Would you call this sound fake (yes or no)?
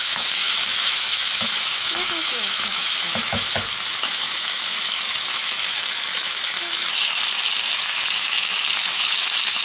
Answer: yes